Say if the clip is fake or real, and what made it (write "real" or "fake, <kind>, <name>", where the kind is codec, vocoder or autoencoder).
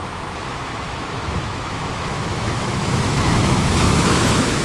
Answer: fake, autoencoder, DAC-VAE